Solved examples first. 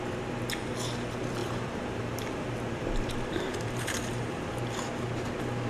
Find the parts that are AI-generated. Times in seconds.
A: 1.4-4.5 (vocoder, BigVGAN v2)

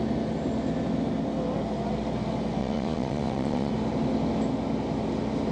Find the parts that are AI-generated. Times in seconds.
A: 2.6-3.7 (vocoder, Vocos)

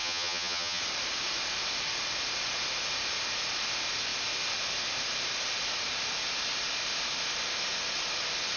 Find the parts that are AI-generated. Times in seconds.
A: 0.0-0.8 (vocoder, BigVGAN v2)

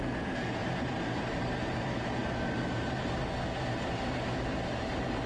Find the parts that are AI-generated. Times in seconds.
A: 0.6-1.5 (vocoder, BigVGAN v2)

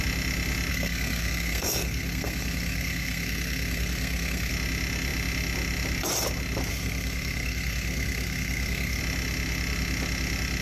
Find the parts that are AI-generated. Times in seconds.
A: 0.7-4.5 (codec, SNAC); 6.7-9.0

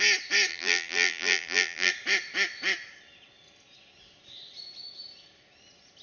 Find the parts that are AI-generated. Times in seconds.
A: 0.5-1.9 (vocoder, BigVGAN v2)

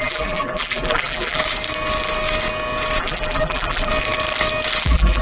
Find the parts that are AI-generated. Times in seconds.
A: 0.0-1.4 (vocoder, BigVGAN v2); 3.0-3.9; 4.8-5.2

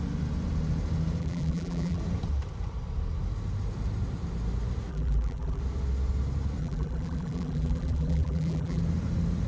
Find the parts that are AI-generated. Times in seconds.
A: 1.2-2.0 (vocoder, BigVGAN v2); 4.9-5.6; 6.6-8.8